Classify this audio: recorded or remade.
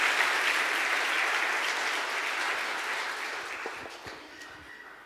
recorded